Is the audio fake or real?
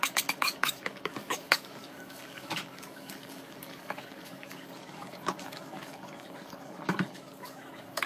fake